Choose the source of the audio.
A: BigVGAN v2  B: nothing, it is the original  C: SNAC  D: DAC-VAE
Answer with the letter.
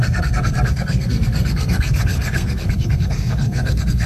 C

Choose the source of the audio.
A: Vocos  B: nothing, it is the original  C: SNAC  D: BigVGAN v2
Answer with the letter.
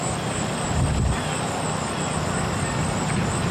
B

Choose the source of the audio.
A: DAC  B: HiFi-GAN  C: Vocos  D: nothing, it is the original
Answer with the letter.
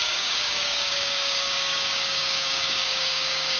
A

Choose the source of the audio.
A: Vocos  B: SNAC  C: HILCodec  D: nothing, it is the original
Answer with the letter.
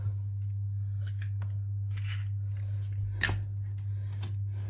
D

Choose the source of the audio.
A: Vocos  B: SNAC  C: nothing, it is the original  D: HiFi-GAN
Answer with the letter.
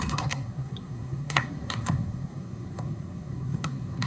B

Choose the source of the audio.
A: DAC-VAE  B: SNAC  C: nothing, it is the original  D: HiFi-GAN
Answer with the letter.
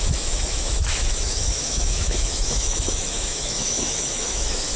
A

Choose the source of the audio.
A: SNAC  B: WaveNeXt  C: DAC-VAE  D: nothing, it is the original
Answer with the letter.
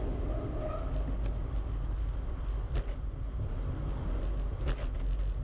D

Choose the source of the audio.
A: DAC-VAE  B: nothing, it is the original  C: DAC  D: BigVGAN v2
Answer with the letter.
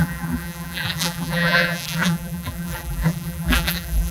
D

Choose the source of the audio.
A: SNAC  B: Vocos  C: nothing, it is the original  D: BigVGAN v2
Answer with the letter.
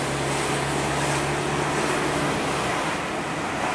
C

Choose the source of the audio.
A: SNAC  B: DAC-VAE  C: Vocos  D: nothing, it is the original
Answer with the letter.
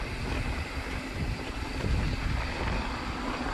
D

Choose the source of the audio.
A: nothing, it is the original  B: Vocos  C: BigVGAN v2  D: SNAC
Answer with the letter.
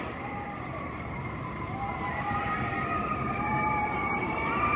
C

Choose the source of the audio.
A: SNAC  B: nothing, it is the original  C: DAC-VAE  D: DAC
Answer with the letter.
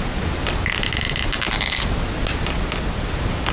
B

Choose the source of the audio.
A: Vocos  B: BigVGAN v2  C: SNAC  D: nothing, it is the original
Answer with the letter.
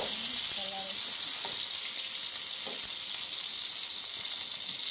D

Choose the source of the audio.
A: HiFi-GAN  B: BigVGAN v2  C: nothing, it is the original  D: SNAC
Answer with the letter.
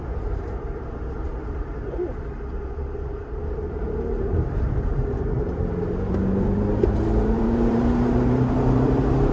B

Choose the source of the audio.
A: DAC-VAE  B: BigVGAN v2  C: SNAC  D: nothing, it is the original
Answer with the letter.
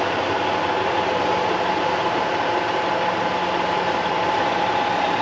D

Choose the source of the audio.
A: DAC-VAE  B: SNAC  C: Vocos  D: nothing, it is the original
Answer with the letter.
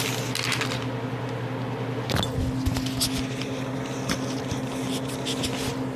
D